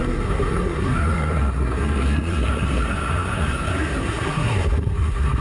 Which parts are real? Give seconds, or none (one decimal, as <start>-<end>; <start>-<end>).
none

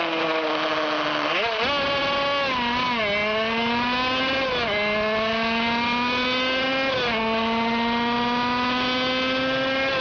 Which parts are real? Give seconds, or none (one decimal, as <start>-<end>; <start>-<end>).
0.0-10.0

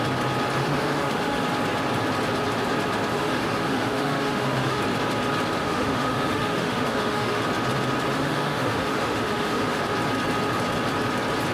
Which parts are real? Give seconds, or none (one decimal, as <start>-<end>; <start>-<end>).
0.0-0.6; 1.4-3.1; 4.8-5.6; 7.4-8.1; 9.8-11.5

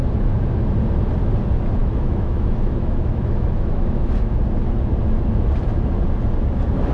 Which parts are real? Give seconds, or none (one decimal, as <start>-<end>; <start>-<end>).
0.0-1.8; 4.4-6.9